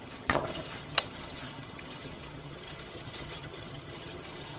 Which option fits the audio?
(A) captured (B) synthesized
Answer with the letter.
B